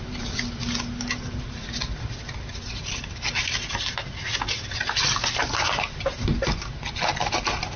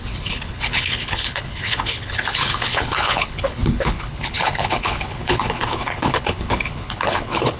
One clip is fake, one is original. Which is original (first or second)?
first